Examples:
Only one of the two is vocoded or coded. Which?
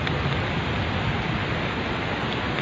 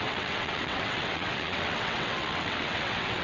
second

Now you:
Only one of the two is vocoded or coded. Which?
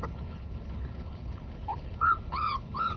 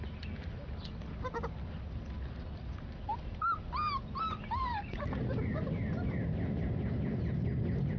first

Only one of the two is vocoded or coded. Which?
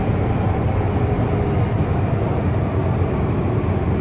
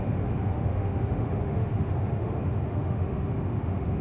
second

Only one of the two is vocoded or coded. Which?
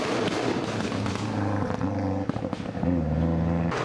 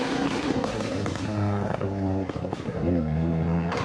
second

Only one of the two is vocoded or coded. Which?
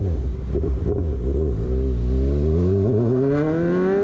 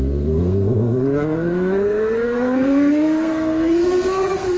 second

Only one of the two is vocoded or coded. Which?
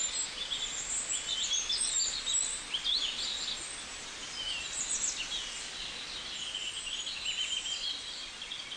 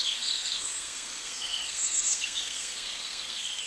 second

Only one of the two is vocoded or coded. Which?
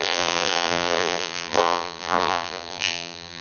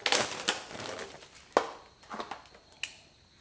first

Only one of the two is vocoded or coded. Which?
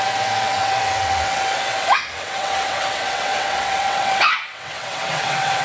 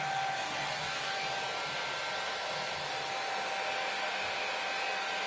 first